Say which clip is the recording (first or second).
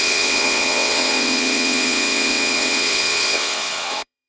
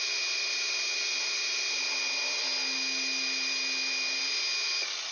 second